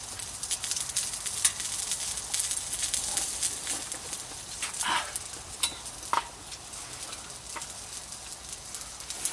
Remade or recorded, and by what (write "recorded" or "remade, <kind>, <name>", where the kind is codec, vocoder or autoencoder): recorded